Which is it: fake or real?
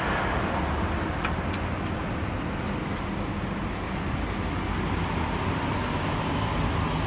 real